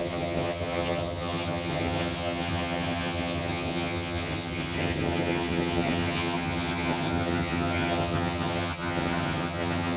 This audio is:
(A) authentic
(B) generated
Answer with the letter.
B